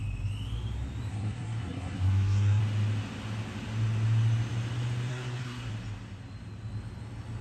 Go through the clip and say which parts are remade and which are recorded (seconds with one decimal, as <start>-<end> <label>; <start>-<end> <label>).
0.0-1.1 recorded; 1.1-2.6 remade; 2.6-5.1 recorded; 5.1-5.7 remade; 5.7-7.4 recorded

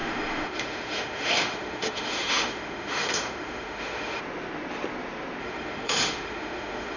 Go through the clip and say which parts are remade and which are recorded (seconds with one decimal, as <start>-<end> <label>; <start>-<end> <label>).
0.0-4.2 remade; 4.2-5.4 recorded; 5.4-7.0 remade

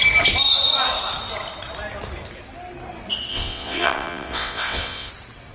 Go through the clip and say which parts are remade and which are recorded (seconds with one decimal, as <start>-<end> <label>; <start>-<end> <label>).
0.0-3.3 recorded; 3.3-5.1 remade; 5.1-5.5 recorded

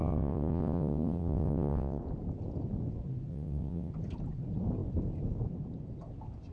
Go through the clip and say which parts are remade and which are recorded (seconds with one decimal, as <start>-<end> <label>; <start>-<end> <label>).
0.0-2.0 remade; 2.0-3.3 recorded; 3.3-3.9 remade; 3.9-6.5 recorded